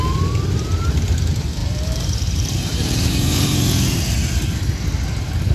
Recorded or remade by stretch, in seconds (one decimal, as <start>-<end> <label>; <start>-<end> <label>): 0.0-1.6 recorded; 1.6-3.7 remade; 3.7-5.5 recorded